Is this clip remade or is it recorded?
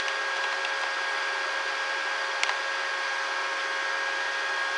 recorded